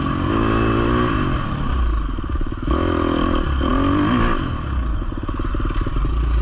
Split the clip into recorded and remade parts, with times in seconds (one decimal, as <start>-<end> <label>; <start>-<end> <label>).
0.0-6.4 recorded